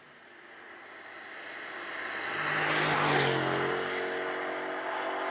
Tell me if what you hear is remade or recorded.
recorded